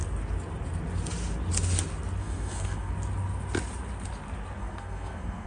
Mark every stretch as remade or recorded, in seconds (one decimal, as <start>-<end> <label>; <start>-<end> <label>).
0.0-2.2 recorded; 2.2-2.9 remade; 2.9-4.6 recorded; 4.6-5.5 remade